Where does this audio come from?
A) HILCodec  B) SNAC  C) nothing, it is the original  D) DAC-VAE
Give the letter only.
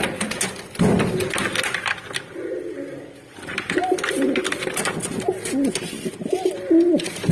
C